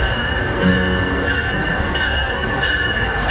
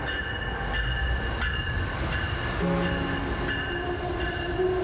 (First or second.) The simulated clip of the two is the first